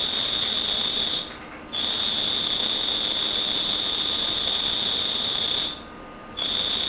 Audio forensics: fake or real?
real